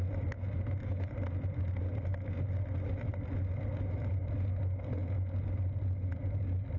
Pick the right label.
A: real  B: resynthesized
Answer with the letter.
A